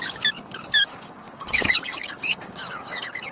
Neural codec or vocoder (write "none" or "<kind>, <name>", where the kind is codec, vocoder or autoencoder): codec, DAC